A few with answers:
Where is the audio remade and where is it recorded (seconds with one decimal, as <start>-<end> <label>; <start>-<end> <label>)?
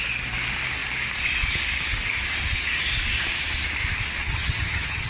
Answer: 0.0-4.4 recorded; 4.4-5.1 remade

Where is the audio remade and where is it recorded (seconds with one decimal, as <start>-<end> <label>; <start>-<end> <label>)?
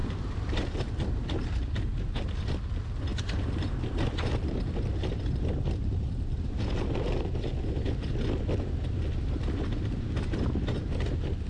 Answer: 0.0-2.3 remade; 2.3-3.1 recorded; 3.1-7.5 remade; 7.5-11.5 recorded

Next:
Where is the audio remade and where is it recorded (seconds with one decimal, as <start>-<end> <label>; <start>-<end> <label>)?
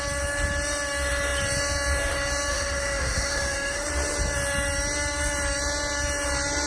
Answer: 0.0-2.5 recorded; 2.5-3.9 remade; 3.9-6.7 recorded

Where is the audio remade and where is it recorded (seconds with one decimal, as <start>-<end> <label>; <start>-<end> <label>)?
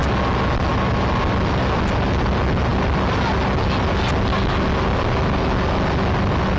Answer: 0.0-6.6 recorded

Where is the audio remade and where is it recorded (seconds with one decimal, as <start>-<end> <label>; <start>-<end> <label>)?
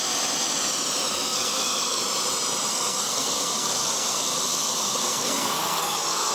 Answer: 0.0-1.1 recorded; 1.1-2.0 remade; 2.0-2.7 recorded; 2.7-6.3 remade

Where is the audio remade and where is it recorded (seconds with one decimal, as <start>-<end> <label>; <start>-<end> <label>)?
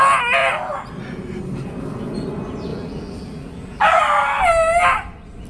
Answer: 0.0-0.4 recorded; 0.4-0.9 remade; 0.9-2.7 recorded; 2.7-4.0 remade; 4.0-5.5 recorded